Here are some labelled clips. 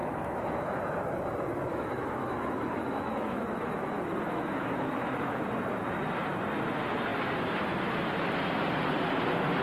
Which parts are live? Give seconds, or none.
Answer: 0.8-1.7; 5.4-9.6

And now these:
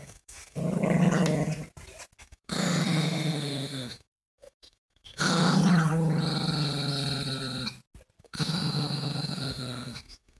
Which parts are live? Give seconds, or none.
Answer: 0.6-2.2; 5.6-8.2

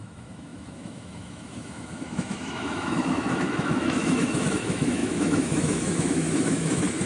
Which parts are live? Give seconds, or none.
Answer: none